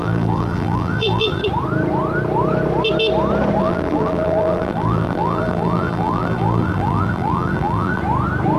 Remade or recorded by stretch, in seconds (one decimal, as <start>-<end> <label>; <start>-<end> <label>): 0.0-1.4 remade; 1.4-3.6 recorded; 3.6-8.0 remade; 8.0-8.6 recorded